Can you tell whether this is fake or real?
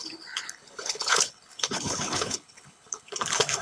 fake